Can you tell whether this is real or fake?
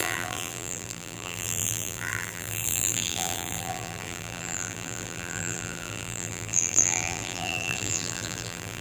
fake